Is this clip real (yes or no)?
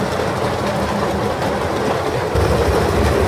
yes